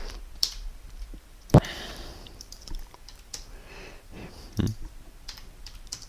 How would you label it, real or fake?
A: fake